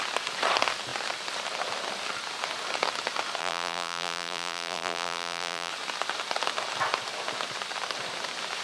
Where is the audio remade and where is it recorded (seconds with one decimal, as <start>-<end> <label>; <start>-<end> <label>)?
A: 0.0-3.4 recorded; 3.4-5.7 remade; 5.7-8.6 recorded